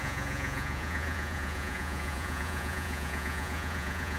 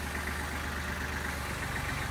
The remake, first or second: first